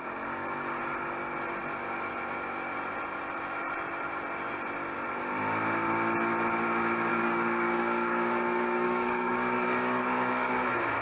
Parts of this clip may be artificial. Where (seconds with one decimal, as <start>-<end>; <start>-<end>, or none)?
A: 7.1-10.5